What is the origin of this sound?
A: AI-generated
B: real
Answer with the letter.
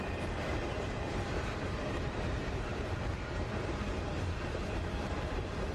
A